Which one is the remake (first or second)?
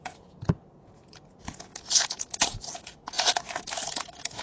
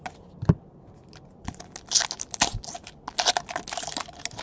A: first